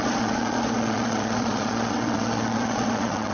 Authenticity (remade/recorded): remade